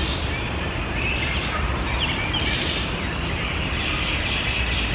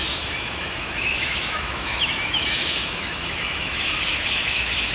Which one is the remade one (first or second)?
second